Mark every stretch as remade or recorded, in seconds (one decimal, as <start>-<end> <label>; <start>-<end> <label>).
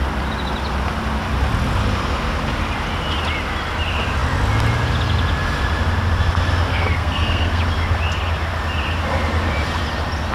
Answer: 0.0-6.7 recorded; 6.7-7.6 remade; 7.6-10.3 recorded